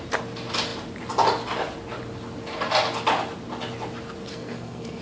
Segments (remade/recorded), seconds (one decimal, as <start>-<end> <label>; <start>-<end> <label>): 0.0-4.3 recorded; 4.3-5.0 remade